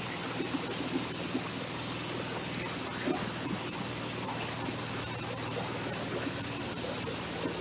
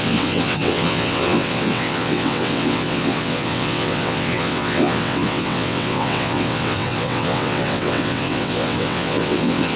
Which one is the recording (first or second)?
first